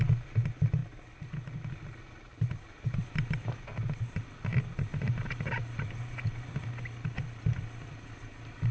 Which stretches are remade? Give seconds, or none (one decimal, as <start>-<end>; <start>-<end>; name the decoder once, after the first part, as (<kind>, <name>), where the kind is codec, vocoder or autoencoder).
2.3-3.0 (vocoder, BigVGAN v2); 4.9-5.9